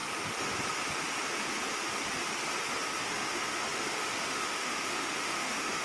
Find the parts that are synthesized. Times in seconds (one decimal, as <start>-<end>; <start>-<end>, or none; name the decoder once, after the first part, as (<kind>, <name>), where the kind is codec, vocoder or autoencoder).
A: 3.0-5.8 (autoencoder, DAC-VAE)